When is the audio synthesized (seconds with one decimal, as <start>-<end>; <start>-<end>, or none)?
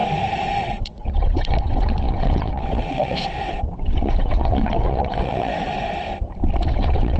0.6-5.5; 6.7-7.2